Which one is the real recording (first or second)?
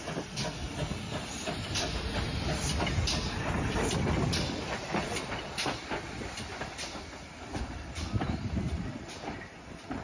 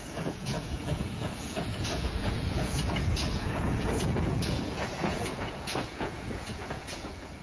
first